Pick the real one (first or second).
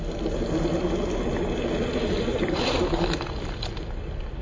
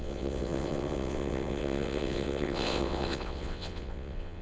first